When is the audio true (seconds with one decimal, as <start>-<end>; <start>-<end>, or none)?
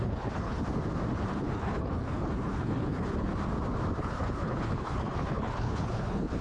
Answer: 0.6-1.3; 3.3-4.0